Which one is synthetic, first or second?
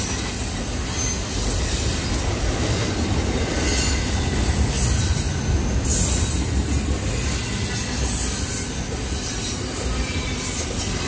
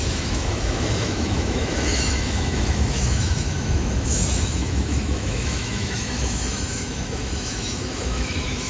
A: second